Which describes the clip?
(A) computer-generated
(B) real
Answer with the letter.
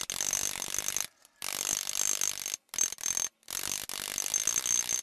B